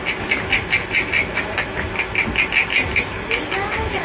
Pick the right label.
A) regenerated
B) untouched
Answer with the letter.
B